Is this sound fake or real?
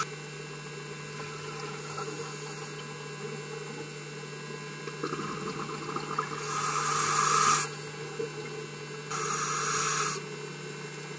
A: real